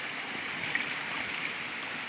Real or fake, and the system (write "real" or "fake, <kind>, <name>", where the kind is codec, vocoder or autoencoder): real